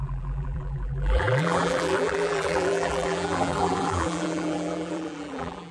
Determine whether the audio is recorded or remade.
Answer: remade